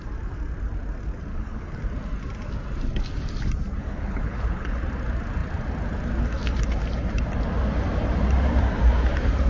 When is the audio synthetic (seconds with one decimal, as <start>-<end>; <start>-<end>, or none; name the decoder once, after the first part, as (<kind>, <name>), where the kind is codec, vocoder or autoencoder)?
1.3-1.8 (codec, HILCodec); 3.8-4.8